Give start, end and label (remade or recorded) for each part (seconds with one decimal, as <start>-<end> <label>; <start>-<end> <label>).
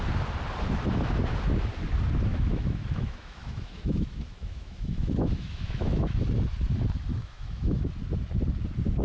0.0-2.3 recorded; 2.3-6.2 remade; 6.2-7.2 recorded; 7.2-7.9 remade; 7.9-9.0 recorded